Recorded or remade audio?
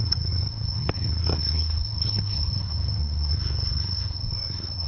remade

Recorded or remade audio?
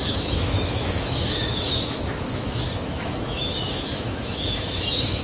remade